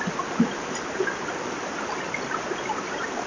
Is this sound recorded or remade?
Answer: recorded